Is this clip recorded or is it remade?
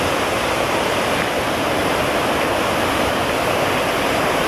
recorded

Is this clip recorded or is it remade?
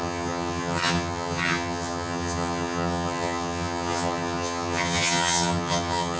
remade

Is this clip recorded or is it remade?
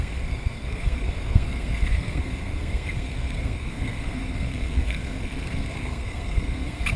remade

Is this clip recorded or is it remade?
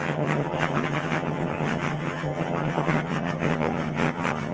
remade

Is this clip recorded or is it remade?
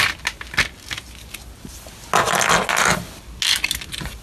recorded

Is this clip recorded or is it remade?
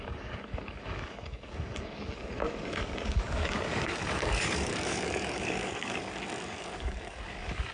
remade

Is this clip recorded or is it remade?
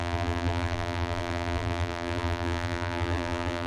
remade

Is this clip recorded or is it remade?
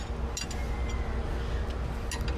recorded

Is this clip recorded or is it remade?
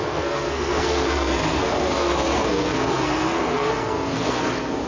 remade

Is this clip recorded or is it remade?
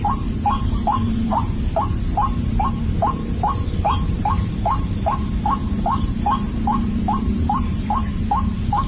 remade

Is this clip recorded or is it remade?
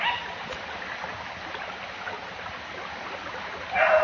recorded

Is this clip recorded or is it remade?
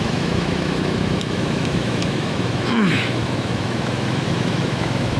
remade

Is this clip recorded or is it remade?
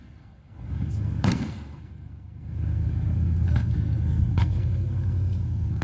remade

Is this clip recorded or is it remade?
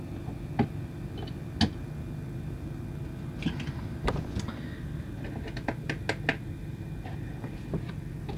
recorded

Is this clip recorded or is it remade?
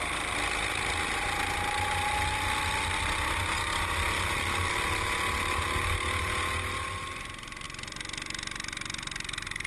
recorded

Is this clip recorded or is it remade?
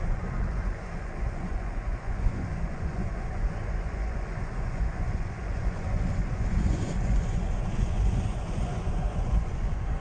remade